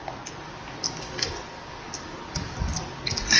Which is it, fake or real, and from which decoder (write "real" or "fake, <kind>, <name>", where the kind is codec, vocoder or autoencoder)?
real